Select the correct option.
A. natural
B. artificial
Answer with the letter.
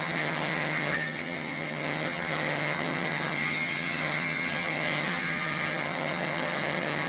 B